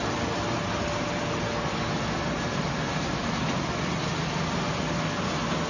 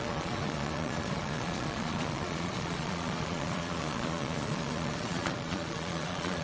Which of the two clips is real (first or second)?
first